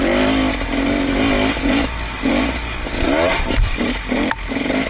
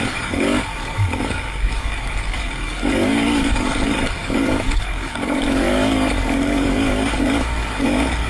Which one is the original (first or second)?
first